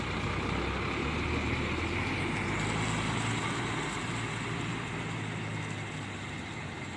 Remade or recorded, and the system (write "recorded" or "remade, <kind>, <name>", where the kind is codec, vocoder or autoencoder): recorded